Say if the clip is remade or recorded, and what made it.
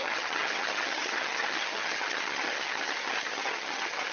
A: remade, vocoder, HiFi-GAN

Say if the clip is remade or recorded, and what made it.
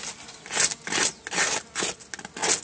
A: recorded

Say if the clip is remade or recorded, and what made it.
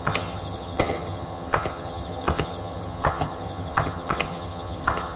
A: remade, vocoder, HiFi-GAN